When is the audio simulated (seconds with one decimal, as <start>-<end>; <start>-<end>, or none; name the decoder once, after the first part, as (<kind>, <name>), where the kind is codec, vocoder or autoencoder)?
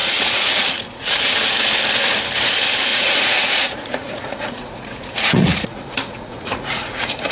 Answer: 0.0-1.2 (vocoder, Vocos); 2.9-7.3